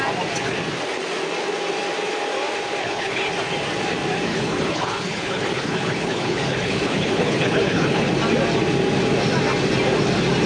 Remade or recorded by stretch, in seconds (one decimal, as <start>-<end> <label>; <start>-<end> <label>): 0.0-2.8 recorded; 2.8-3.3 remade; 3.3-4.3 recorded; 4.3-8.1 remade; 8.1-10.5 recorded